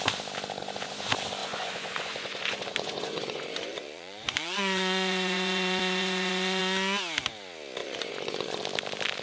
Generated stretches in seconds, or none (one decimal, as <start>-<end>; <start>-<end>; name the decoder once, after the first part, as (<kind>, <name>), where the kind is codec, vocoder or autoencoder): 1.4-6.6 (vocoder, Vocos); 7.8-8.6

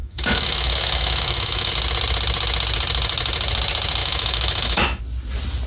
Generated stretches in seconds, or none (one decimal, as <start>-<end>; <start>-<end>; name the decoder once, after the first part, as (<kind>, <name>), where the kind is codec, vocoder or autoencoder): 0.0-1.7 (autoencoder, DAC-VAE); 4.0-5.0

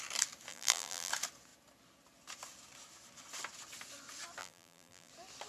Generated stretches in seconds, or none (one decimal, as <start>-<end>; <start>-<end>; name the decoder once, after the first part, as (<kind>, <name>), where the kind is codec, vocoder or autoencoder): 0.5-1.1 (vocoder, BigVGAN v2); 4.4-5.1

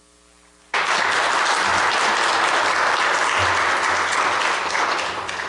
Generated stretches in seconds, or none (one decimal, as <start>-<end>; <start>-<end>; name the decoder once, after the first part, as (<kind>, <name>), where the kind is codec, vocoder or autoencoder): none

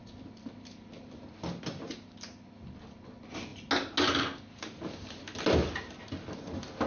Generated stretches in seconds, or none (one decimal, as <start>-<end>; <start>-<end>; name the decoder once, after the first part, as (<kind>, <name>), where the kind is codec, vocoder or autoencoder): none

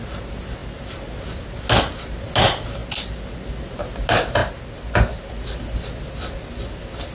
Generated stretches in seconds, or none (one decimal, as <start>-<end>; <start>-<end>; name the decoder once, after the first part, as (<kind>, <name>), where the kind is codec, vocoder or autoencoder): none

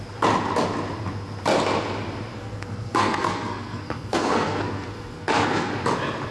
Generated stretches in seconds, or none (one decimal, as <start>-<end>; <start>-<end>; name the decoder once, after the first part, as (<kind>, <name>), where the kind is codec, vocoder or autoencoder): 2.3-5.7 (codec, SNAC)